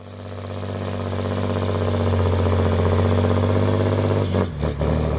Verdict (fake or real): real